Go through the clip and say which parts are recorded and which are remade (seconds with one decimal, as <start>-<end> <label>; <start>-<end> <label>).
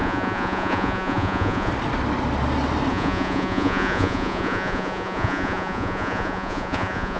0.0-1.7 remade; 1.7-2.9 recorded; 2.9-7.2 remade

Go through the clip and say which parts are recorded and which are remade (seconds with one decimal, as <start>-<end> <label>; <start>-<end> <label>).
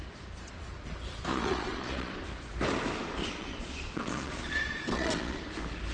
0.0-1.3 recorded; 1.3-2.1 remade; 2.1-3.2 recorded; 3.2-5.4 remade; 5.4-5.9 recorded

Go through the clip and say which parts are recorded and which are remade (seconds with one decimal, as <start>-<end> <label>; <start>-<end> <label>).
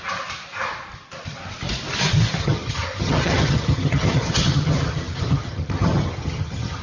0.0-2.4 recorded; 2.4-6.8 remade